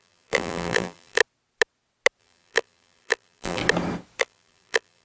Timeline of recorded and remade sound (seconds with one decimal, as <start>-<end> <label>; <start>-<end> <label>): 0.0-1.2 remade; 1.2-2.2 recorded; 2.2-3.6 remade; 3.6-4.2 recorded; 4.2-5.0 remade